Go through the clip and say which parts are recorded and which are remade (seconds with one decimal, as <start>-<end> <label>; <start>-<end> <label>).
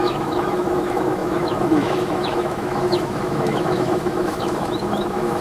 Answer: 0.0-5.4 remade